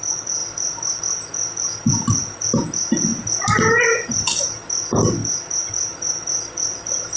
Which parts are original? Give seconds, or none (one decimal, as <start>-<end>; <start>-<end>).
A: 0.0-7.2